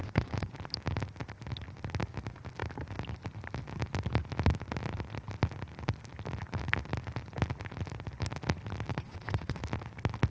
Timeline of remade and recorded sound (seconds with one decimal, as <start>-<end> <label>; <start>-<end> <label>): 0.0-0.5 remade; 0.5-8.9 recorded; 8.9-9.6 remade; 9.6-10.3 recorded